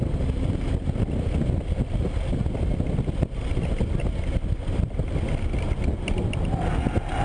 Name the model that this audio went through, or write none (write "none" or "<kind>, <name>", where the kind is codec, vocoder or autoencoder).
none